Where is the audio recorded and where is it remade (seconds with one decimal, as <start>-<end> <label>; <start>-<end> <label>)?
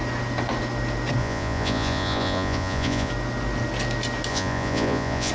0.0-1.2 recorded; 1.2-3.1 remade; 3.1-4.3 recorded; 4.3-5.3 remade